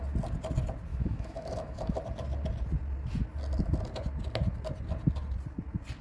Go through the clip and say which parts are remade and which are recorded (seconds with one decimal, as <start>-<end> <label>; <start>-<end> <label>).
0.0-0.9 recorded; 0.9-2.0 remade; 2.0-6.0 recorded